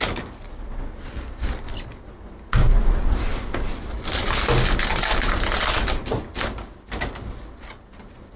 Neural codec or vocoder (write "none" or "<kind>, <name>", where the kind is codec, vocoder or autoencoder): none